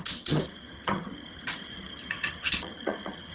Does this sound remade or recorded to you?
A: remade